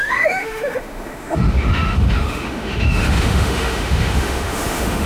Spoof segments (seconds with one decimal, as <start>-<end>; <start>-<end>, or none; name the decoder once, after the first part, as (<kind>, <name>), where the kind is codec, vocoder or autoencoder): 0.0-5.1 (autoencoder, DAC-VAE)